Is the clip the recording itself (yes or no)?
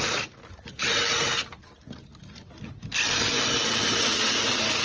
yes